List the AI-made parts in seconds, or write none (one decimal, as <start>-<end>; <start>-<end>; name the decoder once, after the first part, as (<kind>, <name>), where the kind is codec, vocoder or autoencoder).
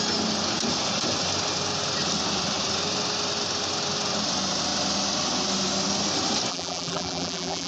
6.5-7.7 (vocoder, BigVGAN v2)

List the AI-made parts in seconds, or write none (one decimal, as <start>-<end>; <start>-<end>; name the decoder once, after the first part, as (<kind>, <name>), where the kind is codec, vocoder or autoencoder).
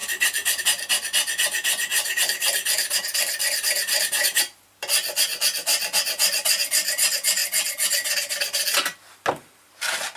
0.6-7.4 (vocoder, BigVGAN v2); 9.3-10.2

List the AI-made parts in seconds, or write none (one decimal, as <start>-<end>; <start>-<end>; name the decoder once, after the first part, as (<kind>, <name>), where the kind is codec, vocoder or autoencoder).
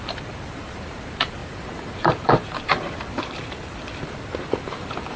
0.0-5.2 (vocoder, BigVGAN v2)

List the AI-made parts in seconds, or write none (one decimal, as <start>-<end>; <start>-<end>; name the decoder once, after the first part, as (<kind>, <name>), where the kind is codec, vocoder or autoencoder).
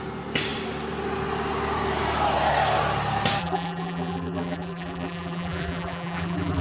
3.4-6.6 (vocoder, BigVGAN v2)